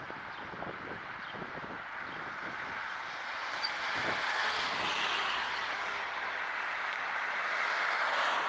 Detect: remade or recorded recorded